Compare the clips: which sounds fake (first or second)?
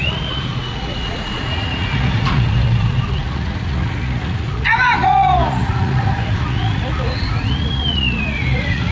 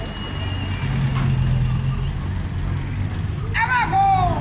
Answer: first